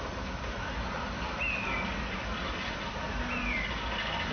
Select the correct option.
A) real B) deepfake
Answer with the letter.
A